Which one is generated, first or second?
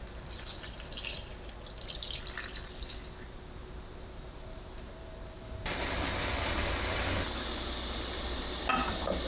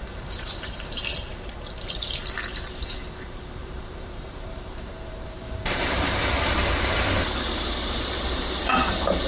second